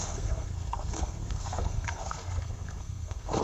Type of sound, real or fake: fake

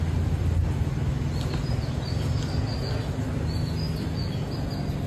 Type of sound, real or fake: real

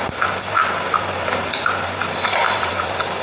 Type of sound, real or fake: real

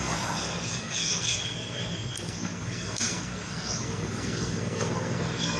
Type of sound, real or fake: fake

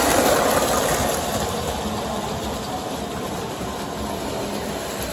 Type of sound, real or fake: real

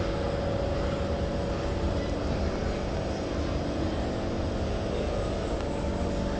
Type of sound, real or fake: real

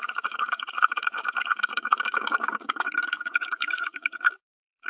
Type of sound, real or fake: fake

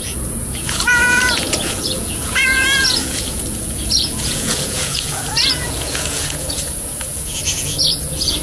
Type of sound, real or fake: fake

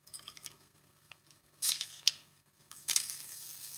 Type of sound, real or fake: fake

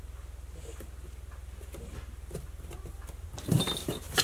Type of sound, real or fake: real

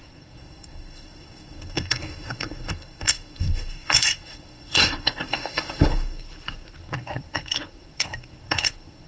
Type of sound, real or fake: fake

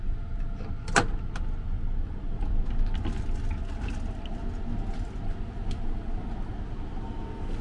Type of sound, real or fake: real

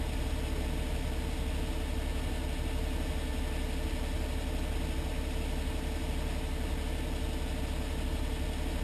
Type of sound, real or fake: real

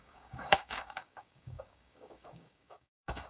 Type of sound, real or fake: fake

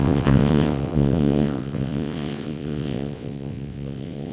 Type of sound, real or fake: fake